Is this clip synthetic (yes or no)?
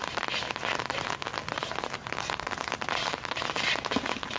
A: no